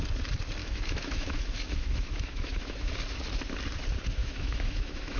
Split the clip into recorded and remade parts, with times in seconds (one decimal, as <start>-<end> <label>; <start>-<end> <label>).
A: 0.0-0.6 recorded; 0.6-2.9 remade; 2.9-4.2 recorded; 4.2-5.2 remade